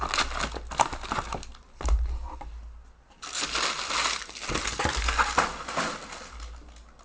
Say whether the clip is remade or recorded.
recorded